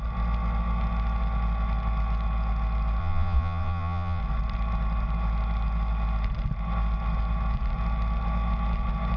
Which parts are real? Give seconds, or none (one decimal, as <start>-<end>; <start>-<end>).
0.0-3.0; 4.2-9.2